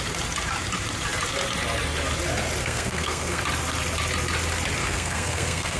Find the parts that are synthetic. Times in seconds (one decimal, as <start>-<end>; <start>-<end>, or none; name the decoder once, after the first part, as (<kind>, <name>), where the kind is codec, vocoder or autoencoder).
2.6-3.4 (codec, SNAC); 4.8-5.8